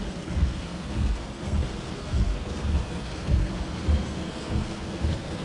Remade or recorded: remade